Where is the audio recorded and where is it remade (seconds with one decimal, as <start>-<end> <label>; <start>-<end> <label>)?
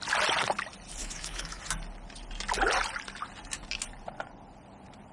0.0-1.0 recorded; 1.0-1.6 remade; 1.6-5.1 recorded